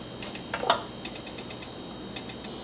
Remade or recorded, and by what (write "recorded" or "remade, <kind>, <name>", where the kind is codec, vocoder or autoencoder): recorded